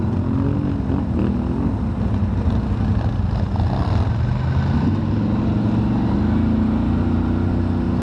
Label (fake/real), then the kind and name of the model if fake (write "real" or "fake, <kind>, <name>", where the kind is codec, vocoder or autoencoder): real